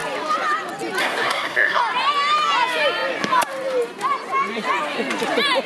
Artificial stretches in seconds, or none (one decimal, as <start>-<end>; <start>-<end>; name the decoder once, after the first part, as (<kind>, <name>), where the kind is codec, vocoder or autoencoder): 1.0-1.8 (codec, SNAC)